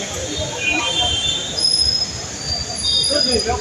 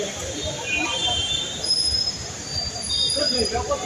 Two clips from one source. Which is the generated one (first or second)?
second